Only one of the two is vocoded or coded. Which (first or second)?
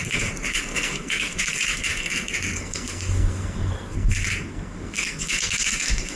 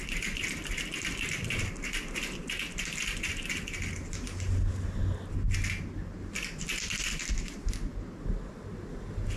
first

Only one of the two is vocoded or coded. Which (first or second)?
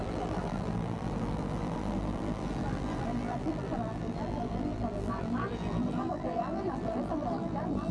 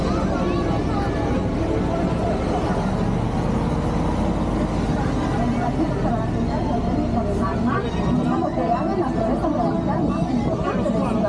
first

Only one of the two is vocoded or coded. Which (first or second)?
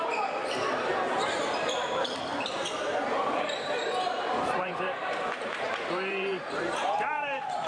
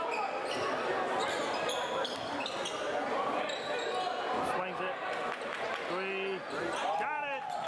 first